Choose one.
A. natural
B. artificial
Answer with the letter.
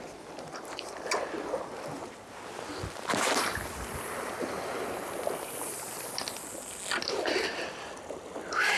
A